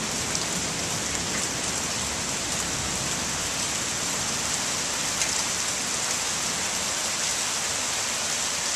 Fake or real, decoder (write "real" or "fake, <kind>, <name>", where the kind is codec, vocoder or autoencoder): real